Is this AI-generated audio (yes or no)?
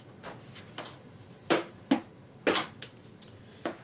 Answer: no